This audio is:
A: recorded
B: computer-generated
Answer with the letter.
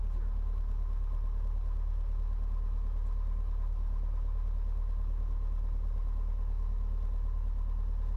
A